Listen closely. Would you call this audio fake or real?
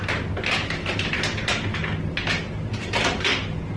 real